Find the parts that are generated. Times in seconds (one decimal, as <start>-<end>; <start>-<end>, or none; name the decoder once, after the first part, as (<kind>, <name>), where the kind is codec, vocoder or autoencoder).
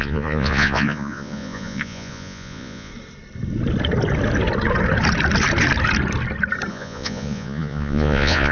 0.0-2.9 (vocoder, Vocos); 6.7-8.5